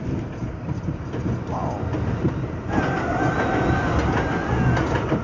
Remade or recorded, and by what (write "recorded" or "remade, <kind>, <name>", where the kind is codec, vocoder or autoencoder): recorded